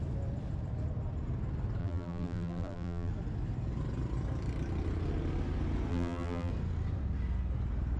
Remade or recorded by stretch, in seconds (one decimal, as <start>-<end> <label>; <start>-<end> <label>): 0.0-1.8 recorded; 1.8-3.1 remade; 3.1-5.9 recorded; 5.9-6.5 remade; 6.5-8.0 recorded